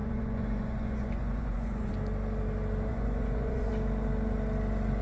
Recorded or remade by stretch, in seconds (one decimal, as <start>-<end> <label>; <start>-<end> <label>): 0.0-1.9 remade; 1.9-2.9 recorded; 2.9-3.7 remade; 3.7-5.0 recorded